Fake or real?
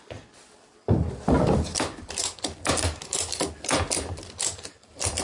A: real